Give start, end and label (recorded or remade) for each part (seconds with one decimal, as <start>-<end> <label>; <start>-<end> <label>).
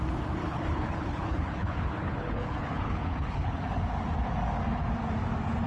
0.0-0.4 recorded; 0.4-3.8 remade; 3.8-5.7 recorded